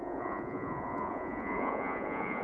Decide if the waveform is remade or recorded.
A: remade